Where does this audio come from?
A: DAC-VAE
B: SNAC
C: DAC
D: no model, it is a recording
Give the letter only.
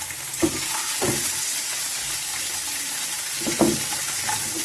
D